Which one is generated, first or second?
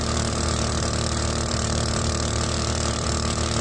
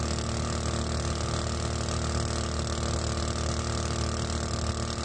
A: first